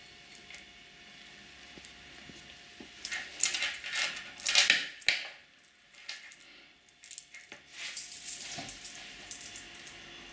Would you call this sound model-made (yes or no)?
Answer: no